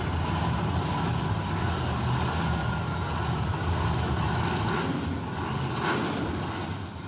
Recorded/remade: recorded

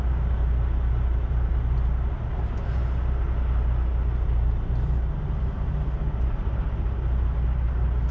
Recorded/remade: recorded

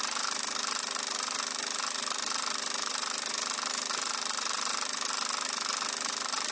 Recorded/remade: recorded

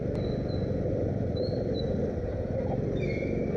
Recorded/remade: recorded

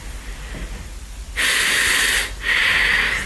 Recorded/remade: recorded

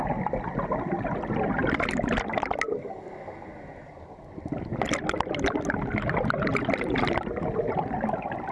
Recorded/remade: recorded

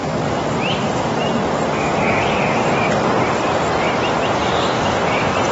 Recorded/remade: recorded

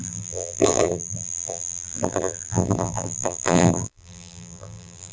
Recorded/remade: remade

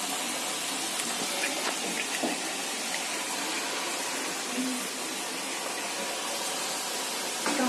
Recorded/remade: recorded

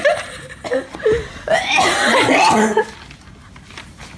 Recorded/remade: recorded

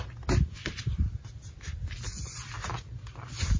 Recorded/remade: recorded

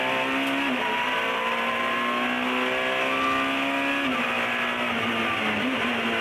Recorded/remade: recorded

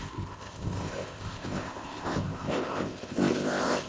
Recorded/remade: remade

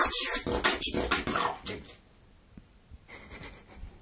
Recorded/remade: recorded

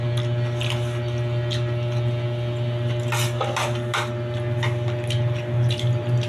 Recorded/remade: recorded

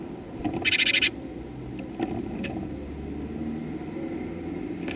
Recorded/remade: recorded